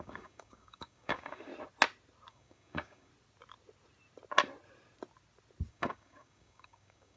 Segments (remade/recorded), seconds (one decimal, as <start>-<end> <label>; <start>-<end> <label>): 0.0-1.5 remade; 1.5-2.3 recorded; 2.3-3.1 remade; 3.1-5.7 recorded; 5.7-7.2 remade